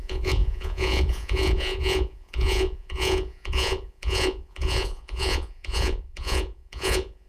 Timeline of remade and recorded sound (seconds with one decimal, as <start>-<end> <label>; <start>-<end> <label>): 0.0-7.3 remade